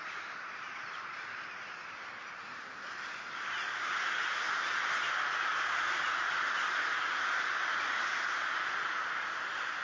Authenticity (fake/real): real